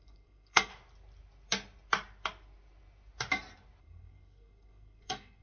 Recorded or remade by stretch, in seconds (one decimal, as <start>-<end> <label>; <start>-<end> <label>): 0.0-0.7 remade; 0.7-3.8 recorded; 3.8-5.4 remade